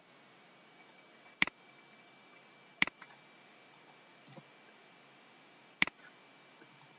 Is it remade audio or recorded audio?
recorded